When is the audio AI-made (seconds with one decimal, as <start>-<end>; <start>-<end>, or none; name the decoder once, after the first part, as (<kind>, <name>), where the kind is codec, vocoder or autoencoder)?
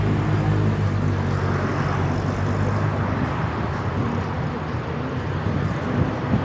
none